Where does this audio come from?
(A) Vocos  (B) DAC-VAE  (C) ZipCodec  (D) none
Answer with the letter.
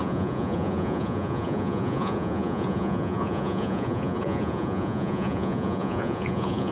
A